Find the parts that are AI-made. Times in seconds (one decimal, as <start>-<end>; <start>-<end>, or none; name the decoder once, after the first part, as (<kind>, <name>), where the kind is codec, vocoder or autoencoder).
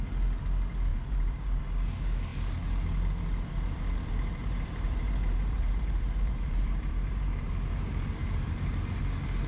0.9-1.6 (vocoder, BigVGAN v2); 4.4-9.0